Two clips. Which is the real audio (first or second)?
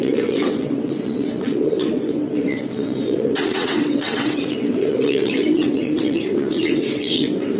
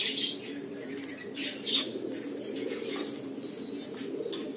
second